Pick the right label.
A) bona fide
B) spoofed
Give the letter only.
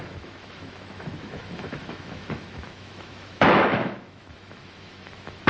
B